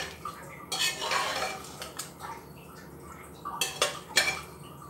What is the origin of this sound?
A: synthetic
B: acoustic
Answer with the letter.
B